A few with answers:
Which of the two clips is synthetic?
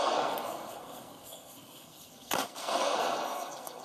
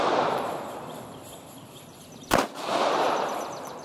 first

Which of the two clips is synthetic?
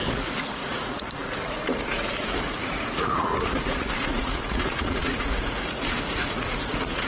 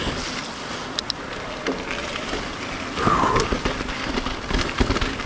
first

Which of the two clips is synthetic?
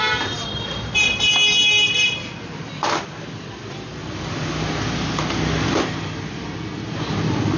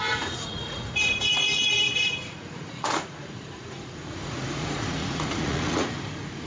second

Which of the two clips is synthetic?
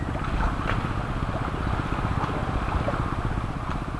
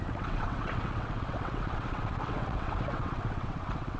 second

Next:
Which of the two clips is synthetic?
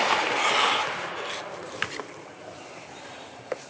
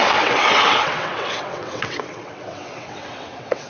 second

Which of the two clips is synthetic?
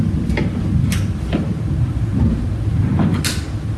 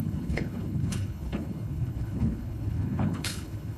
second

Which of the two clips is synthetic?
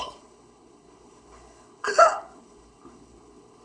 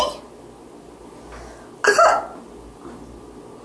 first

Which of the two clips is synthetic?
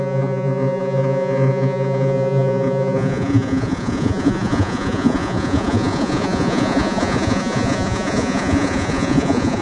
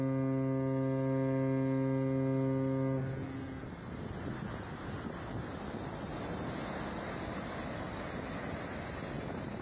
first